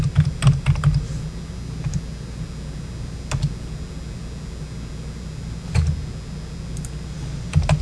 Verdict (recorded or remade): recorded